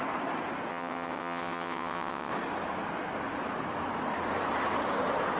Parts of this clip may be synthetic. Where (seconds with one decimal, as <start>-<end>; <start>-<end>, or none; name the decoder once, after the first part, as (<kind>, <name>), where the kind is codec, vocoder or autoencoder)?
0.7-2.3 (vocoder, WaveNeXt)